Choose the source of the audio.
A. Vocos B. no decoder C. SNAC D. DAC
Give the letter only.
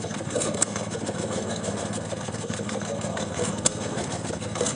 C